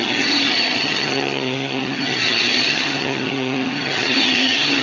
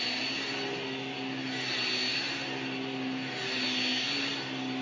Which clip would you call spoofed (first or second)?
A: first